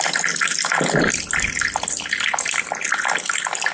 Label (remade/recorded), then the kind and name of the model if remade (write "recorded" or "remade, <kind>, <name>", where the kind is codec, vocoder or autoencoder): recorded